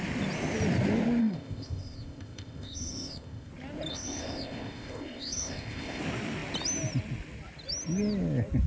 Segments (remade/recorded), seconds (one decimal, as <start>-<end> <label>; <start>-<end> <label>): 0.0-1.2 recorded; 1.2-3.5 remade; 3.5-3.9 recorded; 3.9-6.0 remade; 6.0-8.7 recorded